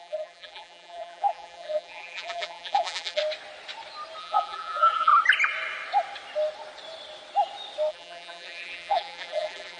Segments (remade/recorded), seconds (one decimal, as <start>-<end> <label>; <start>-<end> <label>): 0.0-3.2 remade; 3.2-4.2 recorded; 4.2-5.1 remade; 5.1-7.9 recorded; 7.9-9.8 remade